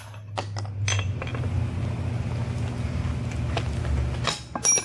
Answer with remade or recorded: recorded